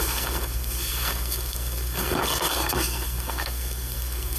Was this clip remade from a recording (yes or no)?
yes